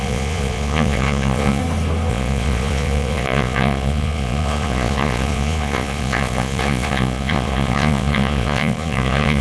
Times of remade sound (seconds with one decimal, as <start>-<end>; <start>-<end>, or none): 0.0-1.6; 2.1-9.4